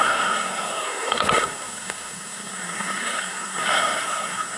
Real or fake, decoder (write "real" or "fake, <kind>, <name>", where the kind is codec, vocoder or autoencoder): fake, codec, SNAC